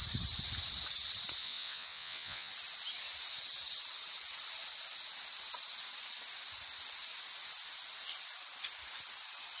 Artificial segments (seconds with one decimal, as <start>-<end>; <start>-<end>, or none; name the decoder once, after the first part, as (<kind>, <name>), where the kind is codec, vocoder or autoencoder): 1.4-2.5 (vocoder, Vocos)